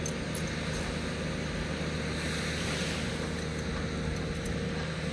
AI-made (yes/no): no